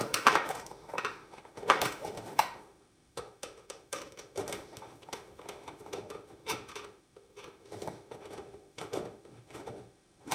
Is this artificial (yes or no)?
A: yes